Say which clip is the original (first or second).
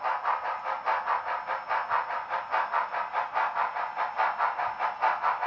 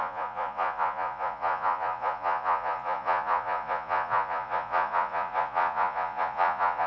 first